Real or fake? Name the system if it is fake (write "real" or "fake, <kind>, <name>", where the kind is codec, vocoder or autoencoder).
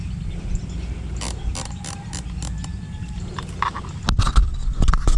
real